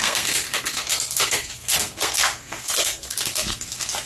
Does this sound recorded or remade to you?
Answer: remade